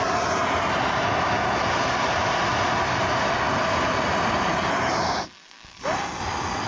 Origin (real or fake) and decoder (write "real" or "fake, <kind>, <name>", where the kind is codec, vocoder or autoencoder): real